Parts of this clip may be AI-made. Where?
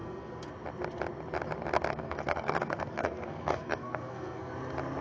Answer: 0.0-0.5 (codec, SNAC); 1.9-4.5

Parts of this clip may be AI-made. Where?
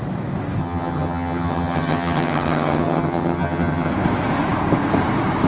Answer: 0.6-3.9 (vocoder, HiFi-GAN)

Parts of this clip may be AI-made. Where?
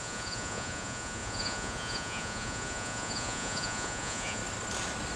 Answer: 0.0-4.4 (vocoder, Vocos)